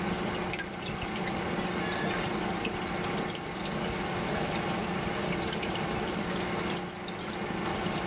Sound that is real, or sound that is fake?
real